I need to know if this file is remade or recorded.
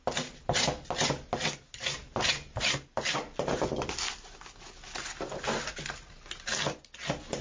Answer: recorded